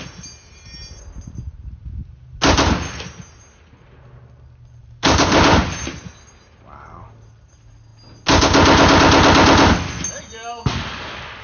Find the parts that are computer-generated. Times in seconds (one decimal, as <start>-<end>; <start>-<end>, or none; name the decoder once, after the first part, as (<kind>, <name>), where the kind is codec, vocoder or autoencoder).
4.8-6.1 (vocoder, BigVGAN v2)